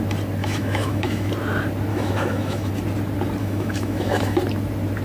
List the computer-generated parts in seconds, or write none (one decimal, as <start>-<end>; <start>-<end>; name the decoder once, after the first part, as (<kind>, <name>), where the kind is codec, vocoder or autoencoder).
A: 0.4-1.3 (autoencoder, DAC-VAE); 1.9-2.7; 3.4-4.4